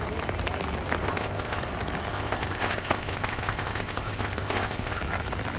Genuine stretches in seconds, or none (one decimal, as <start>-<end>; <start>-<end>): 0.0-1.0; 1.6-2.1; 5.0-5.6